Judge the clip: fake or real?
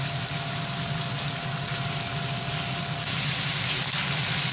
real